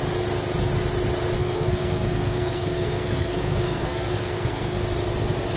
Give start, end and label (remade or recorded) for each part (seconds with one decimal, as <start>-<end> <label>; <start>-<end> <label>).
0.0-1.4 recorded; 1.4-4.8 remade; 4.8-5.6 recorded